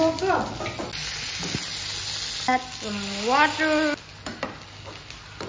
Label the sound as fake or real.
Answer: real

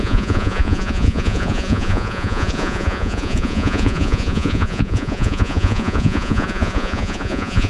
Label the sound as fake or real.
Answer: fake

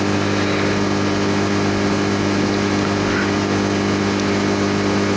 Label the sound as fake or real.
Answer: real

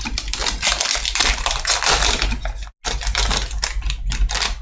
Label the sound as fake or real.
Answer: real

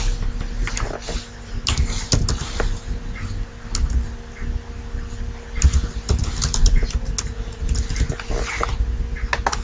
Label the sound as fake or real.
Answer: real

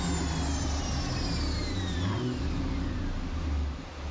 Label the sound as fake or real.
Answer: real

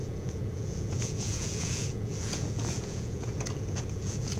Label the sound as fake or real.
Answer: fake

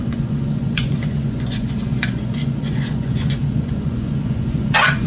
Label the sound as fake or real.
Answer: fake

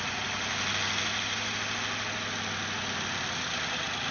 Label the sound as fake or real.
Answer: real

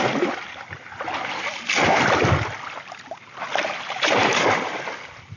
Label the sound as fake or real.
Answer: real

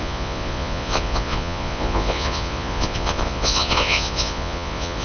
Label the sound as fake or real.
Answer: fake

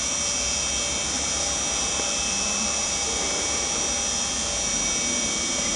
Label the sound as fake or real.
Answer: real